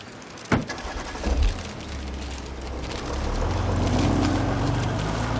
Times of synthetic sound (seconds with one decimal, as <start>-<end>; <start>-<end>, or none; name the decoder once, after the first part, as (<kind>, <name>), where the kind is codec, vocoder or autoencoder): none